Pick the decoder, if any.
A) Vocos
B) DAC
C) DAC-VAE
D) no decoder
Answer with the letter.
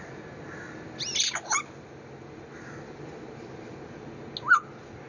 D